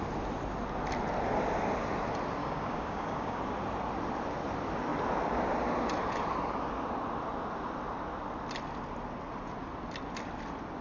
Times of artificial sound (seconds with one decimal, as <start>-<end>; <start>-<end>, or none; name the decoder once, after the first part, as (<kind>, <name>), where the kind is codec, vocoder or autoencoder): 2.4-3.4 (codec, DAC)